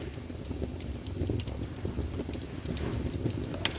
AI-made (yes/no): no